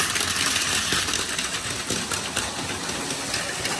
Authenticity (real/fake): real